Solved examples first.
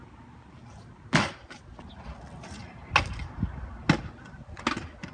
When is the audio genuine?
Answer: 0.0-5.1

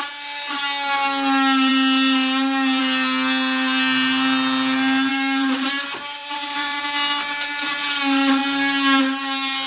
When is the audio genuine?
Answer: 0.0-5.1; 5.7-6.2; 6.8-9.7

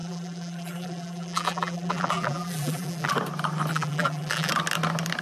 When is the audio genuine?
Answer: 3.1-3.7; 4.5-5.2

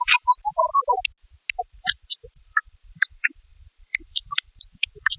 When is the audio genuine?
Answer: 0.7-1.5

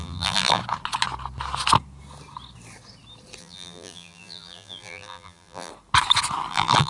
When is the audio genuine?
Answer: 0.6-3.4; 5.7-6.5

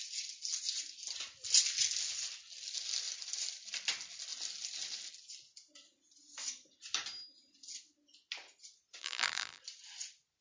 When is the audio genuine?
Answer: 0.0-9.0; 9.6-10.4

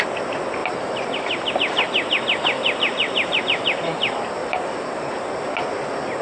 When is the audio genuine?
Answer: 0.0-2.6; 3.4-4.4; 5.4-6.2